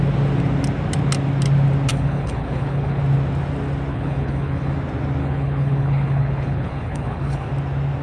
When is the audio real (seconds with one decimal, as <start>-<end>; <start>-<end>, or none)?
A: 0.0-1.9; 3.0-3.9; 4.7-5.2; 7.5-8.0